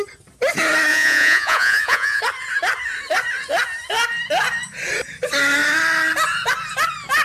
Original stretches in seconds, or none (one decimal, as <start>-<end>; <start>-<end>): 0.0-0.9; 2.2-7.2